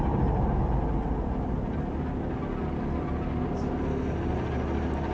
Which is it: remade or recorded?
recorded